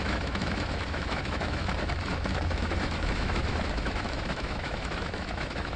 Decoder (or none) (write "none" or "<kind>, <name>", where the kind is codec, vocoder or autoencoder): autoencoder, DAC-VAE